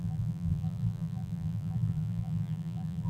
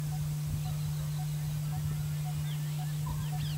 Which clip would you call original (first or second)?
second